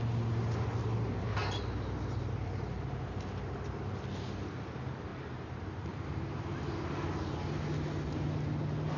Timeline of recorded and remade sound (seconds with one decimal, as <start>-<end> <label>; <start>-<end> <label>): 0.0-5.1 recorded; 5.1-6.9 remade; 6.9-9.0 recorded